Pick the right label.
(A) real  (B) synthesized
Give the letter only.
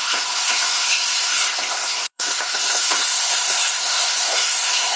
B